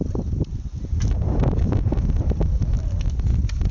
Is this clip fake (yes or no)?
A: no